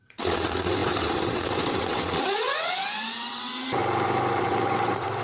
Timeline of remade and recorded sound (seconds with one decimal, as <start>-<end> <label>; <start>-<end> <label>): 0.0-3.8 remade; 3.8-4.4 recorded; 4.4-5.2 remade

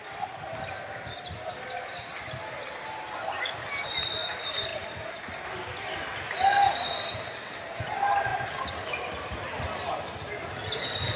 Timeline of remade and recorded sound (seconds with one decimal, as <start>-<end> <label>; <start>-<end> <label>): 0.0-11.2 recorded